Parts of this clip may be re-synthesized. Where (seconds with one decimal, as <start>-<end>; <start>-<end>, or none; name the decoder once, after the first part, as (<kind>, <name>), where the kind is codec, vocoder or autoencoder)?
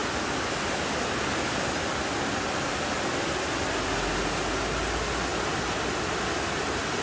none